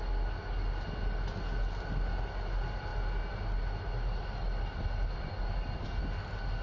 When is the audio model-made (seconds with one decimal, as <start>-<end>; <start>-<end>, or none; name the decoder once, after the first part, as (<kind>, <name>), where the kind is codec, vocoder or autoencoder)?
none